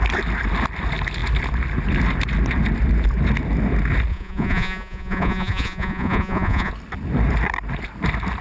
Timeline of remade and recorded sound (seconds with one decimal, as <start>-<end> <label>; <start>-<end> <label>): 0.0-4.1 recorded; 4.1-6.7 remade; 6.7-8.4 recorded